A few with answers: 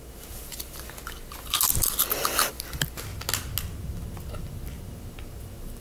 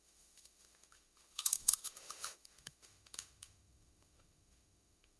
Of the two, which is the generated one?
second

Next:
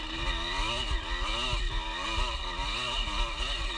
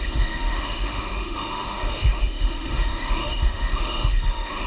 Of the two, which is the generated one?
second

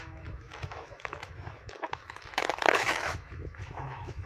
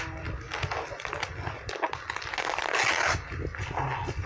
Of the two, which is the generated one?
first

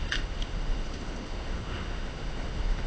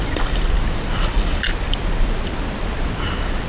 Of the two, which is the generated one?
first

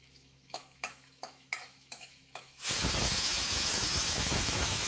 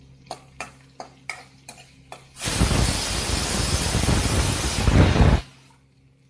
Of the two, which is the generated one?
first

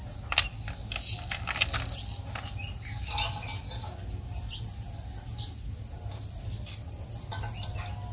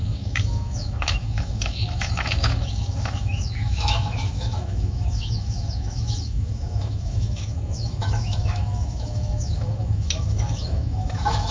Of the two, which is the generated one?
second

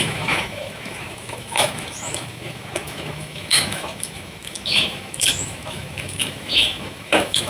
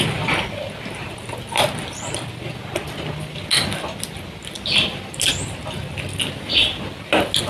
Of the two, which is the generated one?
first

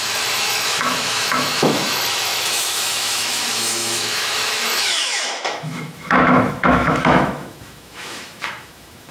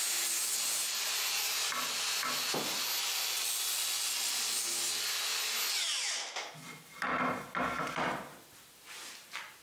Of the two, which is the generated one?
first